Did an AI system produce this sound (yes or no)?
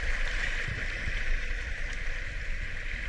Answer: yes